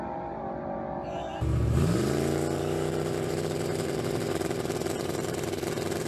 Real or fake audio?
fake